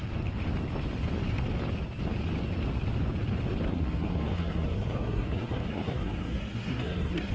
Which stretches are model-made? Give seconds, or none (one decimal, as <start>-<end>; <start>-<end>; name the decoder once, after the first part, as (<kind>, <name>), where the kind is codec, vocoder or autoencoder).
3.7-7.3 (codec, SNAC)